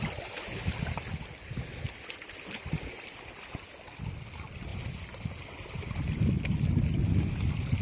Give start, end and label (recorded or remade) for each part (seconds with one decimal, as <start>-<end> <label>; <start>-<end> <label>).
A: 0.0-7.8 recorded